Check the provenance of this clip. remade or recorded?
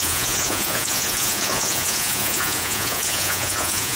remade